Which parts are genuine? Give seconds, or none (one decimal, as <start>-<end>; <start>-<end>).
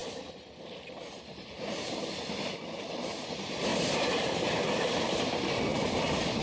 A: 3.2-3.7; 5.2-6.4